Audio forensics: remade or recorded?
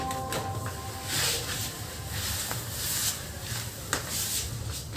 recorded